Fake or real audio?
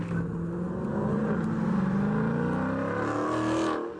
real